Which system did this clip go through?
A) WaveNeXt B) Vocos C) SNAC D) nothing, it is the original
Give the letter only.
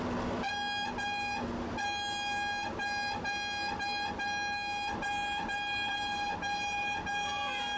D